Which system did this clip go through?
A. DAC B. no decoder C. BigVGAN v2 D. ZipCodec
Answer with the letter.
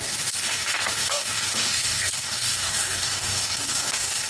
A